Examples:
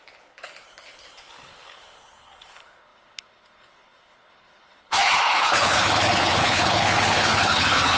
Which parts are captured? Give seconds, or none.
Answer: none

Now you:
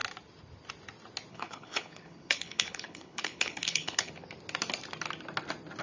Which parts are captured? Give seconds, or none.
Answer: 0.0-1.3; 4.1-5.8

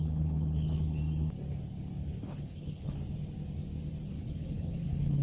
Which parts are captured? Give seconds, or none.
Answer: 1.0-2.0; 3.0-4.1

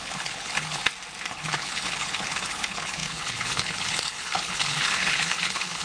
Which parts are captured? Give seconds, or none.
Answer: 0.8-1.3